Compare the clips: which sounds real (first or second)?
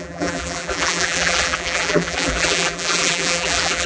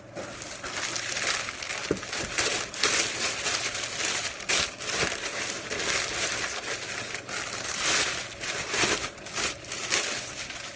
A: second